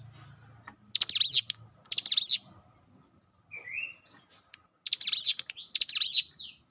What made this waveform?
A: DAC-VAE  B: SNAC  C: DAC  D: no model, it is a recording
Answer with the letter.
D